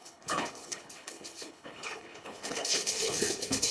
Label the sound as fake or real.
fake